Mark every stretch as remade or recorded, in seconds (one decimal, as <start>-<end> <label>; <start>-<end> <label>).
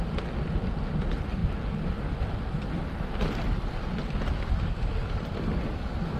0.0-6.2 recorded